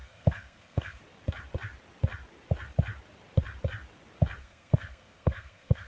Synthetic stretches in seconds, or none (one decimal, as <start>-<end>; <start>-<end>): 0.0-1.0; 4.4-5.9